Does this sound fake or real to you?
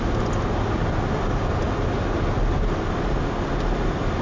real